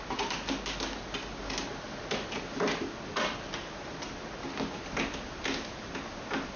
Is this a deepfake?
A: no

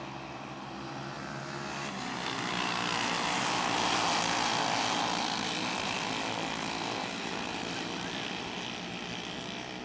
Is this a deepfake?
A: no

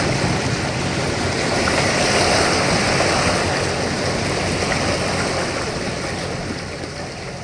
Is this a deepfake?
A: no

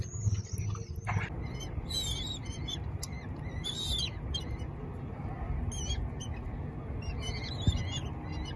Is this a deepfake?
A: no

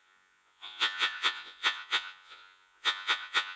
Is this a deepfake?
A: yes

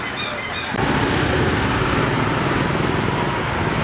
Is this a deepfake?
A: no